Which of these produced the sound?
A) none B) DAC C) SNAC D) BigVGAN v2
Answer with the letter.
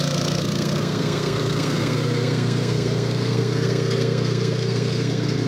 C